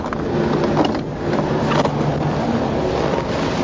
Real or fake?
real